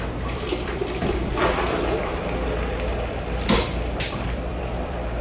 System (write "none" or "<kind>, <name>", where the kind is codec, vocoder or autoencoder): vocoder, BigVGAN v2